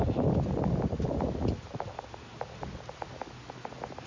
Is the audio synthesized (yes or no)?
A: no